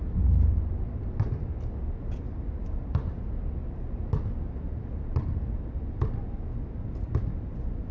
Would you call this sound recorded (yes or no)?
yes